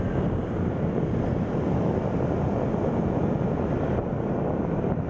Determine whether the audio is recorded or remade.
recorded